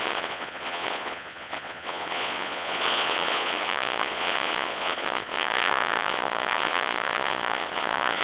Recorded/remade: remade